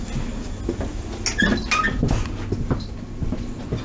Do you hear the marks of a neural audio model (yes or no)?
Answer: no